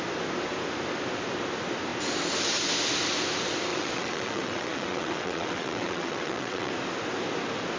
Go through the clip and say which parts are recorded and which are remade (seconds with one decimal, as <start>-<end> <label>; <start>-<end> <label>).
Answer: 0.0-3.7 recorded; 3.7-6.7 remade; 6.7-7.8 recorded